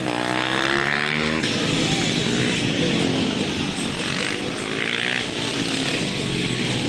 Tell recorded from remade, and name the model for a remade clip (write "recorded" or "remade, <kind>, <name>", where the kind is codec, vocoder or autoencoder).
recorded